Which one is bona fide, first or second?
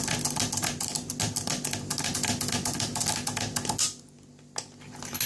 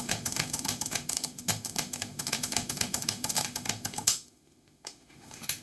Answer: first